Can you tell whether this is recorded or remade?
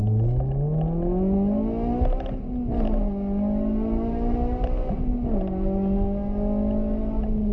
recorded